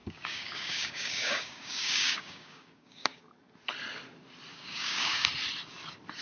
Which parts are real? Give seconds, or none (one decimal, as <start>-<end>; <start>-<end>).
3.2-4.5; 5.3-6.2